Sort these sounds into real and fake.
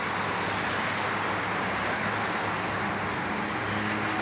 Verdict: real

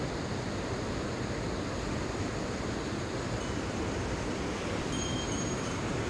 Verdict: real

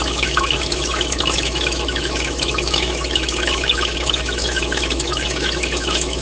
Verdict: fake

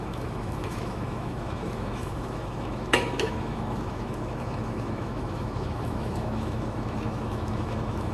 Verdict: fake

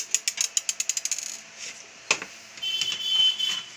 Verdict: real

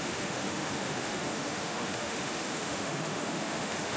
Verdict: fake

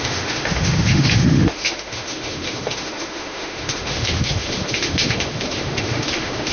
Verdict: fake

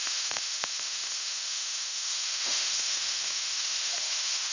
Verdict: fake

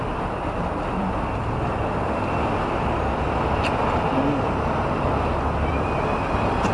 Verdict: real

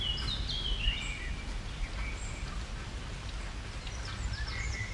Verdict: real